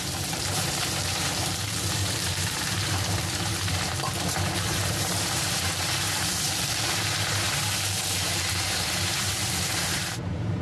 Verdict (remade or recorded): remade